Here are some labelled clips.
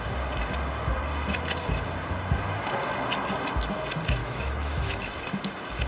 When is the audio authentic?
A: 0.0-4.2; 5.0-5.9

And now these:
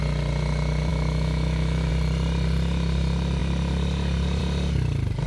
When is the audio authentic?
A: 0.0-0.9; 1.9-5.3

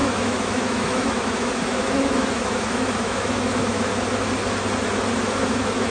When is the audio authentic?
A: 3.9-5.5

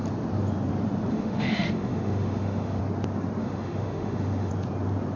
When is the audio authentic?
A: 0.0-1.1; 2.8-3.4; 4.5-5.2

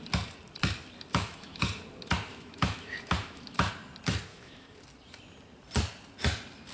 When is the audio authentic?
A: 0.0-1.1; 1.8-2.3; 3.7-4.3; 4.8-6.7